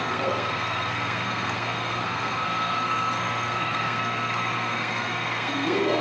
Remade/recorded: remade